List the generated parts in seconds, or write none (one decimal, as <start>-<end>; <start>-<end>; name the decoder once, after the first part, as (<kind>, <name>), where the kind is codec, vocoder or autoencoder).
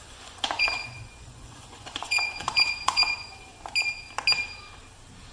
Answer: 0.0-3.5 (vocoder, Vocos)